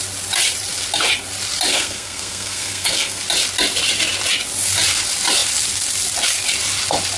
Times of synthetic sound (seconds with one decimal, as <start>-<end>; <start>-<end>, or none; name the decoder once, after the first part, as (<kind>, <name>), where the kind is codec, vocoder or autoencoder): 1.7-3.2 (codec, SNAC)